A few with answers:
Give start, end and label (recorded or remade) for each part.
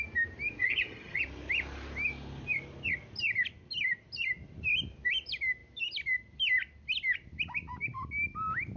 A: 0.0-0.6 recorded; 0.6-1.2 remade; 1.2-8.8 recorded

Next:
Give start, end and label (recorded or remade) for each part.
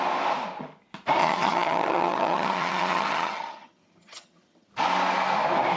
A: 0.0-1.2 recorded; 1.2-4.7 remade; 4.7-5.8 recorded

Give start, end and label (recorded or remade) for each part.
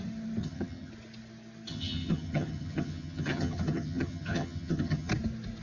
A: 0.0-0.4 recorded; 0.4-0.9 remade; 0.9-1.7 recorded; 1.7-5.1 remade; 5.1-5.6 recorded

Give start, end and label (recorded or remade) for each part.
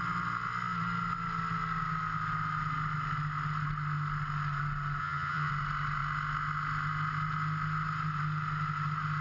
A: 0.0-5.0 recorded; 5.0-5.5 remade; 5.5-9.2 recorded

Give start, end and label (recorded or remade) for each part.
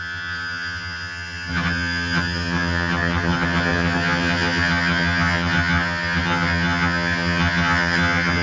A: 0.0-8.4 remade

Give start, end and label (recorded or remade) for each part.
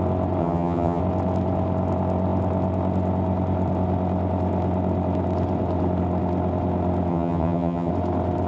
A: 0.0-0.4 recorded; 0.4-1.0 remade; 1.0-7.1 recorded; 7.1-7.9 remade; 7.9-8.5 recorded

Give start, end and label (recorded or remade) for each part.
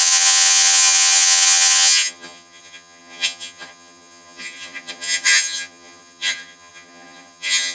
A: 0.0-7.7 remade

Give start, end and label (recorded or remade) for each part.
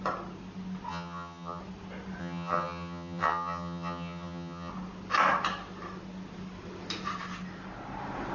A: 0.0-0.9 recorded; 0.9-1.6 remade; 1.6-2.2 recorded; 2.2-4.7 remade; 4.7-8.3 recorded